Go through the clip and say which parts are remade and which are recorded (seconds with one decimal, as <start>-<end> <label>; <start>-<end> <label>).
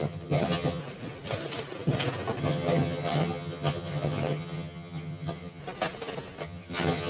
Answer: 0.0-0.8 remade; 0.8-2.4 recorded; 2.4-5.6 remade; 5.6-6.4 recorded; 6.4-7.1 remade